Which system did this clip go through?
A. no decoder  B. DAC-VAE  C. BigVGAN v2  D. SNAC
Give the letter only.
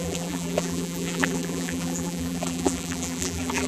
C